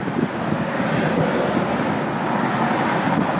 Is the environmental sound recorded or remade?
recorded